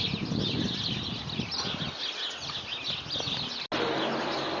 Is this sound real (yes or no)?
yes